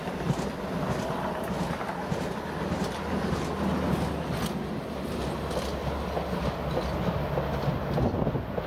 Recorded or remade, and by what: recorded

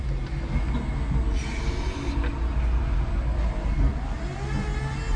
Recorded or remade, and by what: recorded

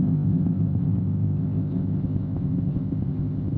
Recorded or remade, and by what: remade, codec, ZipCodec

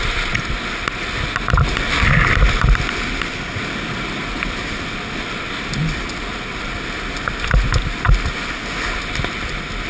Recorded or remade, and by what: recorded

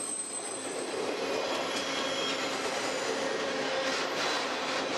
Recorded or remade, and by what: recorded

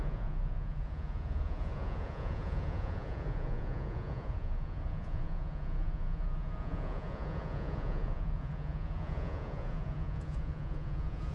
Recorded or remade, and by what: remade, vocoder, Vocos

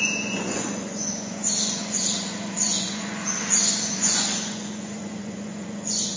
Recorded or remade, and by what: remade, vocoder, Vocos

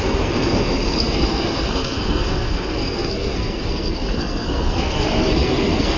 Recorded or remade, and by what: remade, codec, SNAC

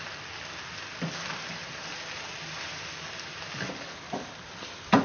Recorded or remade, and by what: recorded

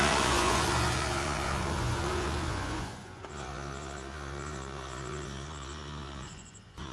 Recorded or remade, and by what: remade, vocoder, Vocos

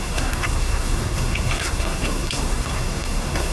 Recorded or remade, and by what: remade, codec, SNAC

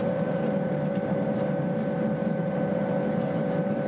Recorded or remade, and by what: remade, vocoder, BigVGAN v2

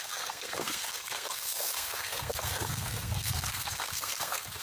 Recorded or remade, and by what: remade, codec, SNAC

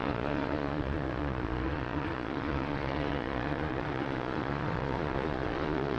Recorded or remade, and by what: remade, vocoder, Vocos